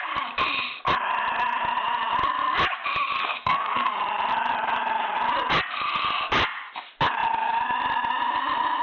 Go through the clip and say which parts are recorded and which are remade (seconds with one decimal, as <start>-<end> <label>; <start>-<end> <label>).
0.0-3.2 recorded; 3.2-3.9 remade; 3.9-8.8 recorded